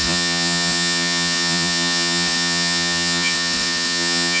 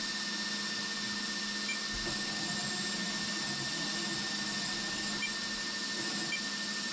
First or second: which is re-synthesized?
first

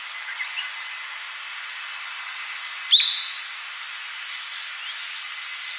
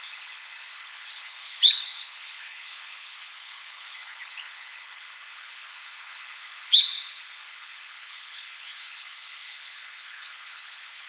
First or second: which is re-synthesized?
second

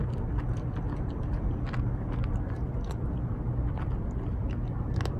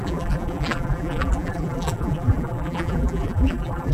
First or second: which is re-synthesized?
second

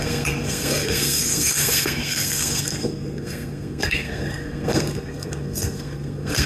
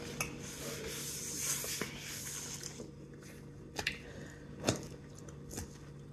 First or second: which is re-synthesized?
first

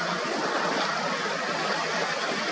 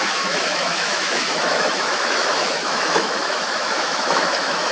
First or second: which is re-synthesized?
second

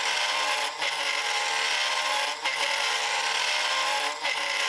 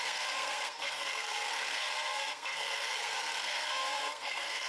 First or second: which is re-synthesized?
second